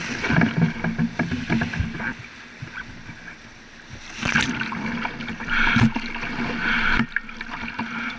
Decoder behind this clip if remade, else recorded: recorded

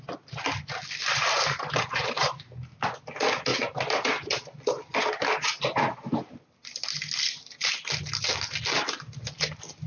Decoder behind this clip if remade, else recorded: recorded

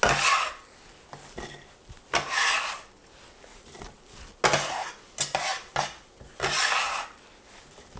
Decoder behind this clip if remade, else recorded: recorded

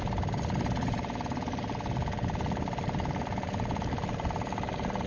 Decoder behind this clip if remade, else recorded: remade, vocoder, BigVGAN v2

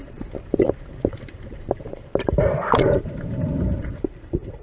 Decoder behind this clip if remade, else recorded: remade, vocoder, BigVGAN v2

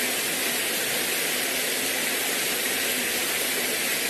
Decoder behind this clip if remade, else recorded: recorded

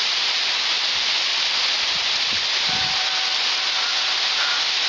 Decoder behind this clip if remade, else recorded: recorded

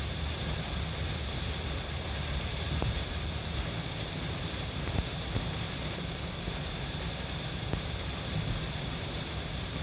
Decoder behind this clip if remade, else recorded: remade, vocoder, BigVGAN v2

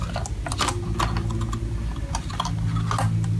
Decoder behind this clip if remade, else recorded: recorded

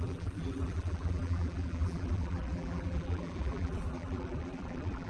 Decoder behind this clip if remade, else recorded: remade, vocoder, BigVGAN v2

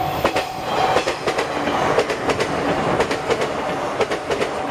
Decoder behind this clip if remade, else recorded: recorded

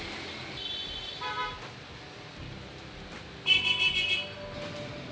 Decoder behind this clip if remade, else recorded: recorded